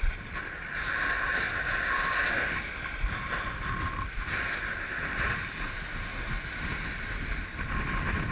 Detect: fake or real real